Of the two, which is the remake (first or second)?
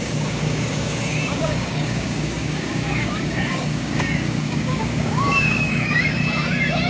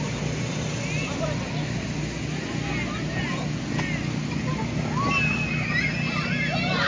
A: first